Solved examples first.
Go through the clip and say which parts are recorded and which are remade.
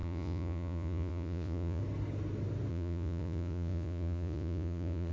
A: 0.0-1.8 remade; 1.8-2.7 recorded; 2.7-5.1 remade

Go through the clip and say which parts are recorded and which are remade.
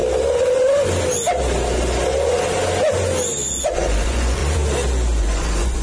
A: 0.0-3.5 recorded; 3.5-4.4 remade; 4.4-5.2 recorded; 5.2-5.8 remade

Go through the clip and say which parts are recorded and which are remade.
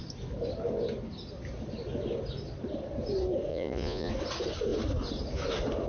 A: 0.0-3.5 recorded; 3.5-4.1 remade; 4.1-5.9 recorded